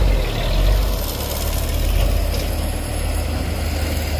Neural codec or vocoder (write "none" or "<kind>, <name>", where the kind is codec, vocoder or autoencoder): none